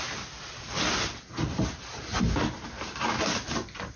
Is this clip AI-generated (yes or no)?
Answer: no